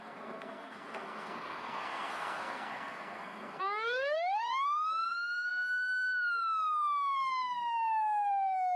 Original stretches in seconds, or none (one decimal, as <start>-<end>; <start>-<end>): none